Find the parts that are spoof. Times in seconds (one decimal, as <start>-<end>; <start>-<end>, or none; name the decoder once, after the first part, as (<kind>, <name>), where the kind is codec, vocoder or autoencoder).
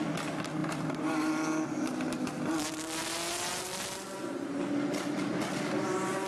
0.6-1.3 (vocoder, BigVGAN v2)